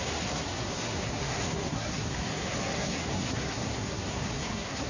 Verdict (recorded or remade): remade